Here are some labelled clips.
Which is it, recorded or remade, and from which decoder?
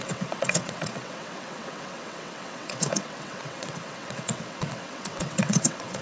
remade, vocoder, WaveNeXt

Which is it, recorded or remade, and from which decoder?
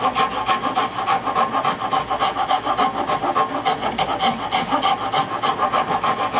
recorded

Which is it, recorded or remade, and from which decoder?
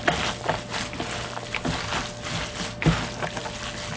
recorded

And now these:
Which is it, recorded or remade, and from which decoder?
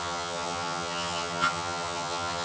remade, vocoder, HiFi-GAN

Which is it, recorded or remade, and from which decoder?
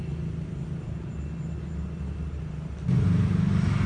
recorded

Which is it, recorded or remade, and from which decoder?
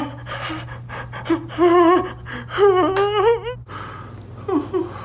recorded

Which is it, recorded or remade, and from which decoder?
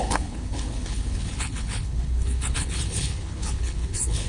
remade, codec, HILCodec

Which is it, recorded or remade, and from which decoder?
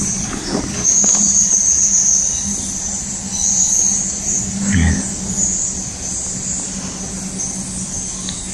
recorded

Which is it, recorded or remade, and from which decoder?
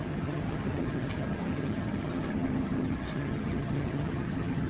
remade, vocoder, HiFi-GAN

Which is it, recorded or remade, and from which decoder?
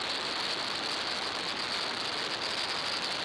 recorded